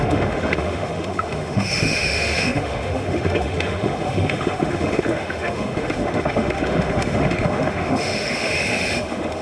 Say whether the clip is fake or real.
fake